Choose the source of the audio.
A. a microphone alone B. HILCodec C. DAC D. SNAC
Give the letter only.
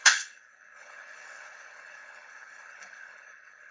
B